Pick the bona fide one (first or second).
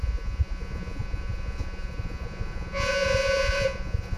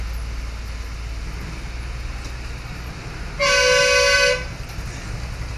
second